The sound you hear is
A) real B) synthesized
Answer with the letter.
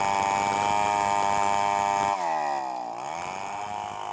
A